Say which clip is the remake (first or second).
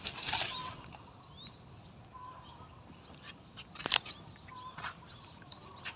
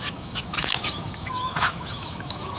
second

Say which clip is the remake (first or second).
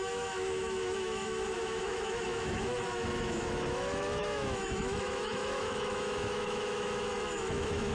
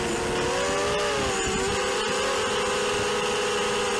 first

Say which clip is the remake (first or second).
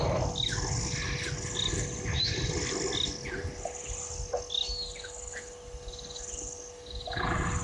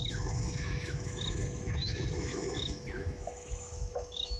second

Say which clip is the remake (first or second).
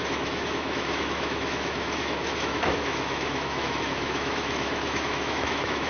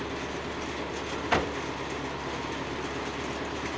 first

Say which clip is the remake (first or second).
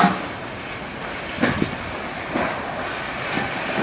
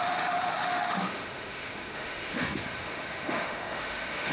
second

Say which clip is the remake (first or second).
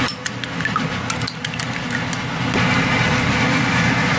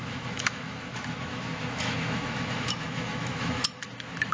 second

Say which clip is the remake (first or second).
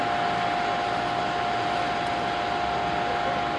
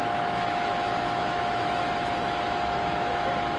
second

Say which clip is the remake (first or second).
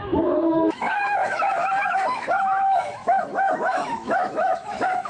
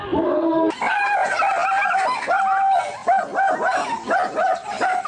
first